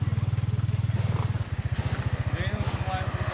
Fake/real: real